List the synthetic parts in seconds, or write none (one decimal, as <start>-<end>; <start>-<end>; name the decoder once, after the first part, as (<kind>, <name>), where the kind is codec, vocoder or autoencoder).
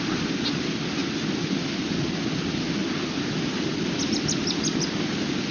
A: none